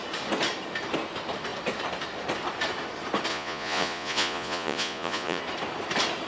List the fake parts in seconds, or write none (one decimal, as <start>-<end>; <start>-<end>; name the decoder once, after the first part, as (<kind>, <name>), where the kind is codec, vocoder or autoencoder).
3.3-5.4 (vocoder, Vocos)